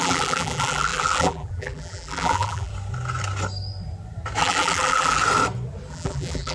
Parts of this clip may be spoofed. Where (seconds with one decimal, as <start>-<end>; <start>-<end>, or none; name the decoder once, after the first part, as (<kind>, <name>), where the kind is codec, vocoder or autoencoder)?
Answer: 0.0-2.7 (vocoder, BigVGAN v2); 4.4-5.2; 5.9-6.5

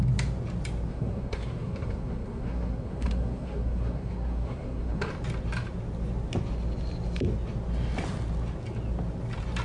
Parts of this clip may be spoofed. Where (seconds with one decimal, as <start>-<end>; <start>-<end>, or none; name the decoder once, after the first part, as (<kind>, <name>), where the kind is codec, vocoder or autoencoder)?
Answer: 0.9-5.1 (codec, SNAC)

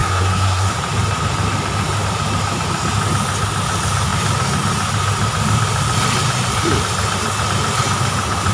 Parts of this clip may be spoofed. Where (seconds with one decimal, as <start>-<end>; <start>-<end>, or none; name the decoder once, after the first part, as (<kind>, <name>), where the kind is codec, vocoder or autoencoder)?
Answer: 0.0-0.7 (codec, SNAC)

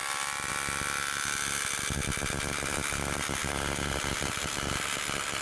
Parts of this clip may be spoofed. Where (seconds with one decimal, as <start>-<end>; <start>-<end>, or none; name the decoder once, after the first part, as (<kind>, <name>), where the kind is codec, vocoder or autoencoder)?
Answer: 0.0-0.5 (vocoder, BigVGAN v2)

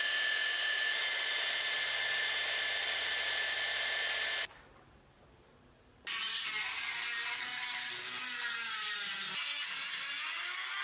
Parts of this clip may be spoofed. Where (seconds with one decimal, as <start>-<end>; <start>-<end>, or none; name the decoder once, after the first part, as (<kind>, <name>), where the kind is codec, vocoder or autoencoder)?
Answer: 0.4-5.2 (vocoder, BigVGAN v2)

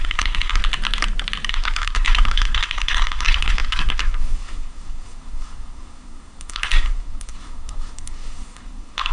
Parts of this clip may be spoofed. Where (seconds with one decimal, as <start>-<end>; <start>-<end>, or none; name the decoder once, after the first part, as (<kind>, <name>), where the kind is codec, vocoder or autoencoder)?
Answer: 0.0-0.6 (codec, SNAC); 1.5-9.1

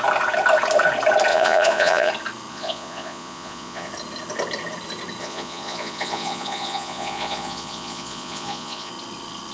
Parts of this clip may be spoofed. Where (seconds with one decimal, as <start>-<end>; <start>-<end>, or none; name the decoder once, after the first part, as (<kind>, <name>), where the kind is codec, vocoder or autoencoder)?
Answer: 1.3-2.1 (vocoder, Vocos); 2.5-3.9; 5.2-8.9